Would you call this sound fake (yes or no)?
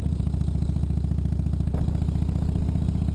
no